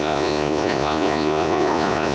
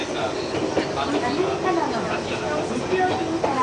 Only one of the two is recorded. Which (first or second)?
second